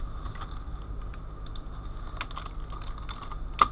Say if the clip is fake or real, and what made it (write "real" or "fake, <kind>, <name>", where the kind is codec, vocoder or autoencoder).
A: real